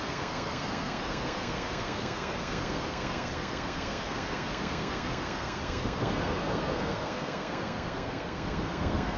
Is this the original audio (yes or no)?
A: no